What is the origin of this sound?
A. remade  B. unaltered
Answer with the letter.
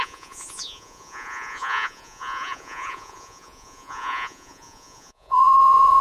A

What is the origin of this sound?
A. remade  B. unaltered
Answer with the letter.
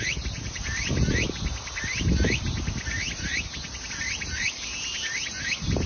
A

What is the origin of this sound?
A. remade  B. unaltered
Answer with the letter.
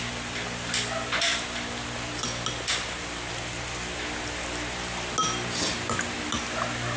B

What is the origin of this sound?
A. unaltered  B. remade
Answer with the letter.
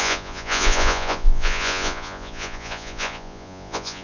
B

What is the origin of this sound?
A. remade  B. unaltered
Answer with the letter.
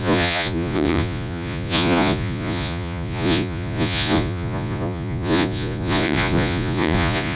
A